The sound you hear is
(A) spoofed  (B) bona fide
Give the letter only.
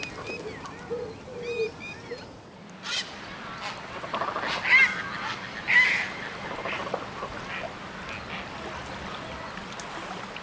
B